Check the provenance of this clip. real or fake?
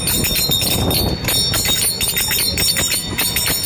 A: real